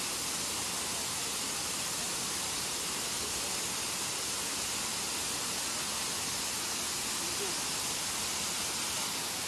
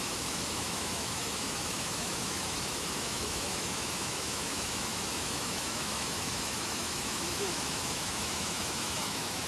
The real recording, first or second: first